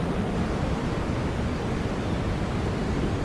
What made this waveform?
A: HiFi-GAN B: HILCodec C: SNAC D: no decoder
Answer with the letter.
D